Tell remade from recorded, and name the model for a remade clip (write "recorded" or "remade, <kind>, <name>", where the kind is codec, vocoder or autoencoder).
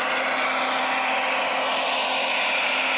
recorded